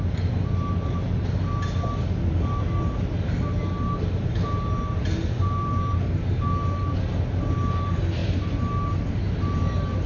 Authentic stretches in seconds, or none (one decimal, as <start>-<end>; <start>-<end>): 0.0-10.1